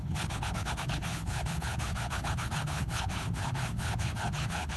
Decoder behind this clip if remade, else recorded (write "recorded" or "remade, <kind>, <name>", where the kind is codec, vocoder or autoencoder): remade, codec, HILCodec